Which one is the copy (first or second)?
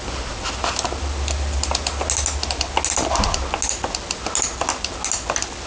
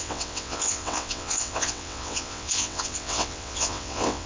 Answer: second